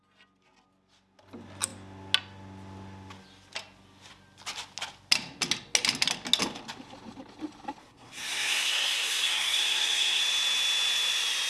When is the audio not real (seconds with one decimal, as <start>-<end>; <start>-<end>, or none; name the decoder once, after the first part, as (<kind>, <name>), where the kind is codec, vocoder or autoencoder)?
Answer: 7.8-10.2 (codec, SNAC)